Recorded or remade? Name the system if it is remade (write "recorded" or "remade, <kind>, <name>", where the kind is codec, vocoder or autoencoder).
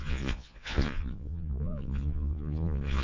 remade, vocoder, Vocos